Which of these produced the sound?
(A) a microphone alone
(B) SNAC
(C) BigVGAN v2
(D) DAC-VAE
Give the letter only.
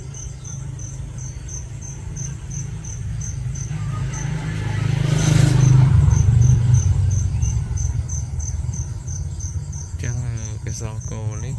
C